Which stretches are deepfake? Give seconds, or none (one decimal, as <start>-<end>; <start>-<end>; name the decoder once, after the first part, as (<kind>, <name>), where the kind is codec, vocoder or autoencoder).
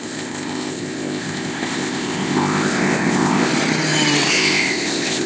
0.0-3.5 (codec, ZipCodec); 4.3-5.3